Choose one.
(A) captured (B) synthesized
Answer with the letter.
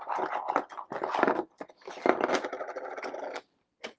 A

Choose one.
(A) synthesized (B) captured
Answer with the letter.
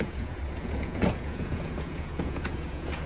A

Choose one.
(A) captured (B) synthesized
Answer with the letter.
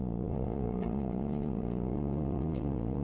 B